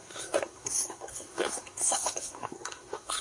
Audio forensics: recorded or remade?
remade